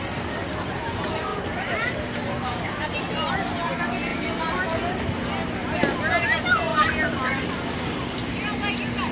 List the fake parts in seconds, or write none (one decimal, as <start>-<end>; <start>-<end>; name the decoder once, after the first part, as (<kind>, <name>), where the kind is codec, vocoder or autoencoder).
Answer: 1.3-3.3 (vocoder, BigVGAN v2)